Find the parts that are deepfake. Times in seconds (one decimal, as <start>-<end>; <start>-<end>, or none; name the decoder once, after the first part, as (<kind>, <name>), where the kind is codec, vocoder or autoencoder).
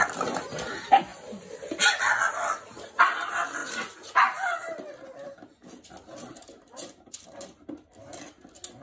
none